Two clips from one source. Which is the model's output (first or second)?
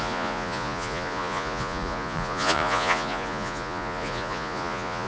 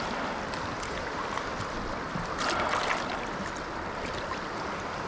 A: first